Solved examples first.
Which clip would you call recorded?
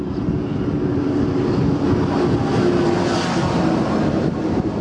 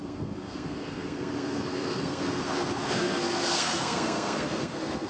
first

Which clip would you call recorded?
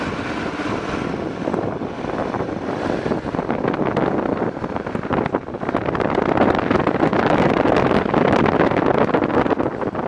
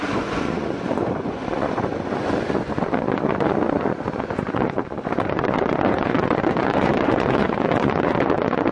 first